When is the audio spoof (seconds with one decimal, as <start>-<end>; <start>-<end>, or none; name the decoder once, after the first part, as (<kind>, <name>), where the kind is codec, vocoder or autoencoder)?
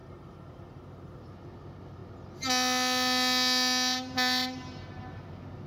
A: 0.0-1.2 (vocoder, BigVGAN v2)